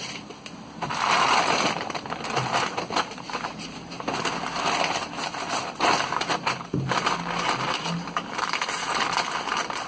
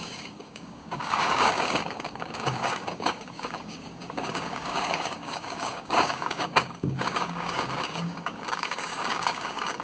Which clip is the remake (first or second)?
second